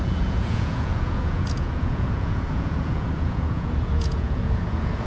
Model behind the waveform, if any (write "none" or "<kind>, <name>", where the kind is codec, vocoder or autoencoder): vocoder, Vocos